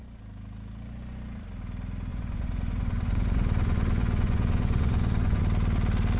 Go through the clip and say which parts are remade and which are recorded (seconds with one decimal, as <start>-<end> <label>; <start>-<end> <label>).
0.0-2.1 recorded; 2.1-5.4 remade; 5.4-6.2 recorded

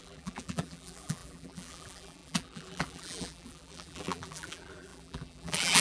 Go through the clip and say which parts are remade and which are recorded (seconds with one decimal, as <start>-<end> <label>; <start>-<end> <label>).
0.0-5.8 remade

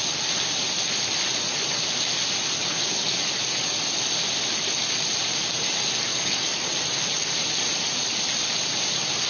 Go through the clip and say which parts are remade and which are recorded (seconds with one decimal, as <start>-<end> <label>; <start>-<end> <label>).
0.0-2.6 recorded; 2.6-3.2 remade; 3.2-6.1 recorded; 6.1-6.7 remade; 6.7-9.3 recorded

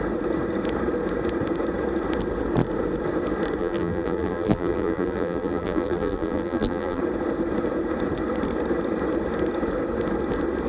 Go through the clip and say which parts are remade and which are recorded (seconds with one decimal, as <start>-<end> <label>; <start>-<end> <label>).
0.0-3.6 recorded; 3.6-7.0 remade; 7.0-10.7 recorded

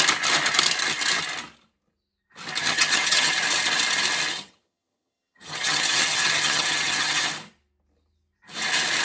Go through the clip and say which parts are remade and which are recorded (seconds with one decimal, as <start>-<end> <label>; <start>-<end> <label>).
0.0-2.6 recorded; 2.6-3.4 remade; 3.4-4.3 recorded; 4.3-7.3 remade; 7.3-9.0 recorded

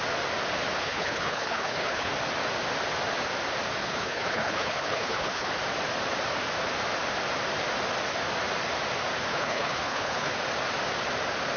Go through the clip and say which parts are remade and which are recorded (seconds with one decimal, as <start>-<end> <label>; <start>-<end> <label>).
0.0-0.8 recorded; 0.8-2.1 remade; 2.1-3.8 recorded; 3.8-5.5 remade; 5.5-9.3 recorded; 9.3-10.3 remade; 10.3-11.6 recorded

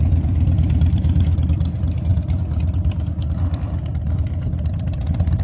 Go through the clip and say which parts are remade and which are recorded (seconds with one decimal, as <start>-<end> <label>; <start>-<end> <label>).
0.0-5.4 recorded

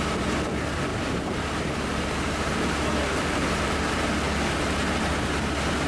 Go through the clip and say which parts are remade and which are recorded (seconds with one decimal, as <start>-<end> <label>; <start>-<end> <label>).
0.0-0.9 recorded; 0.9-4.1 remade; 4.1-5.9 recorded